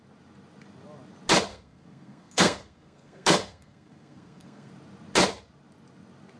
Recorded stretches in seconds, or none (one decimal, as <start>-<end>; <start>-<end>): 0.0-1.5; 4.7-6.4